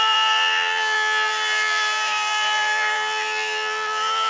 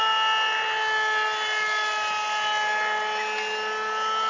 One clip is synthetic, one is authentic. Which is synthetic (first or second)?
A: first